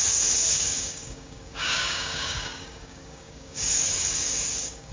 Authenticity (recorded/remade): remade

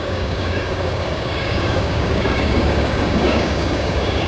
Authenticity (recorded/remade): remade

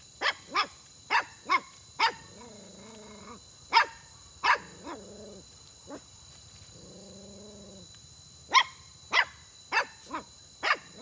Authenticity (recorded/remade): recorded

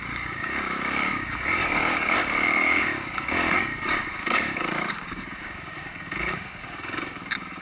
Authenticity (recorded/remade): remade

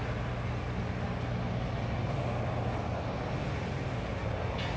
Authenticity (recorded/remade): recorded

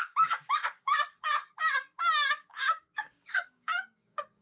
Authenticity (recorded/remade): remade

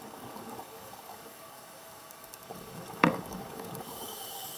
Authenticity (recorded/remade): remade